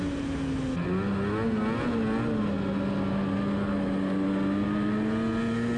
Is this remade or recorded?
recorded